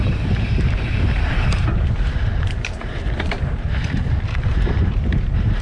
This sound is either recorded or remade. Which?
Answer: remade